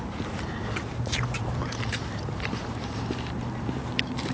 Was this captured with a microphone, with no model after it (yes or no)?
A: no